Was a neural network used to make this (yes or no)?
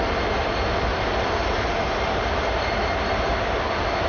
no